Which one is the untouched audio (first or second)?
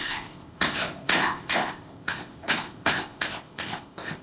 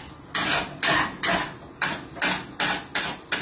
second